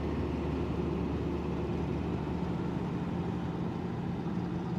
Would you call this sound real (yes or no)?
yes